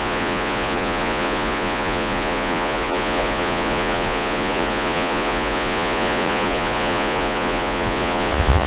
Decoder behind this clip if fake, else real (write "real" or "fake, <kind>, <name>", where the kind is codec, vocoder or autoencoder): fake, vocoder, Vocos